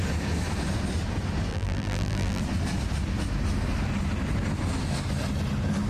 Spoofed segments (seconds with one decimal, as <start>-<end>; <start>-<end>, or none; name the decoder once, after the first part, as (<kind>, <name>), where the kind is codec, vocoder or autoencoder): 1.5-2.4 (vocoder, BigVGAN v2)